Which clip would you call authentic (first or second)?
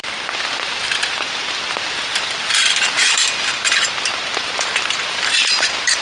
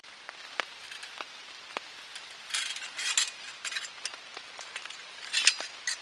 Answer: second